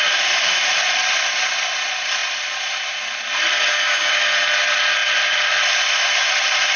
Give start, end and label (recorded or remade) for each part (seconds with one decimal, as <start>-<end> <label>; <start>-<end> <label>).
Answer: 0.0-3.7 recorded; 3.7-4.2 remade; 4.2-6.8 recorded